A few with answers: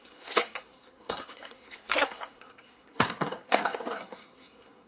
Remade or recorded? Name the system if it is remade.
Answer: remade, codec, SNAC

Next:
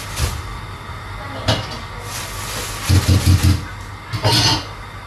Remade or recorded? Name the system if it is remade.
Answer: recorded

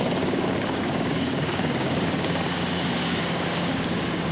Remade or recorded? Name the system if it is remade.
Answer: remade, codec, DAC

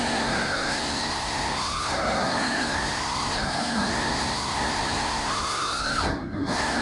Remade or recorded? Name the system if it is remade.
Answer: remade, codec, SNAC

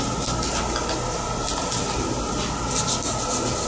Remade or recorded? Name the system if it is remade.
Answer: recorded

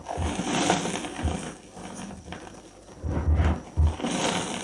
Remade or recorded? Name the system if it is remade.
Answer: recorded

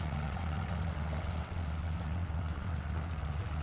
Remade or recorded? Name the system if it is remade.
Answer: remade, vocoder, WaveNeXt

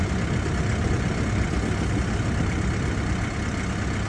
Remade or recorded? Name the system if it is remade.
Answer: recorded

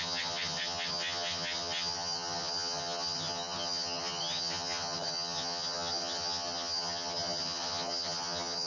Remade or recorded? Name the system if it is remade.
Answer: remade, vocoder, HiFi-GAN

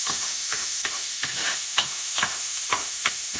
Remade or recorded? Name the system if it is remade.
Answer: remade, autoencoder, DAC-VAE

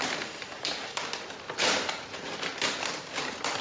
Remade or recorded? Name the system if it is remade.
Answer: recorded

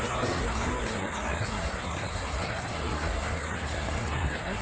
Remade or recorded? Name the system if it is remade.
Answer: remade, codec, SNAC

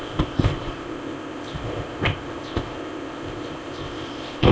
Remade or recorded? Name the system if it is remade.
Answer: remade, codec, ZipCodec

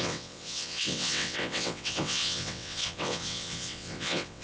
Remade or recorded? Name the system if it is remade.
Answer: remade, vocoder, WaveNeXt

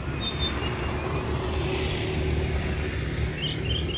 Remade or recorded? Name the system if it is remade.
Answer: recorded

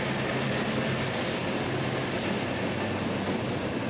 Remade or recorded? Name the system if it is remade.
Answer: recorded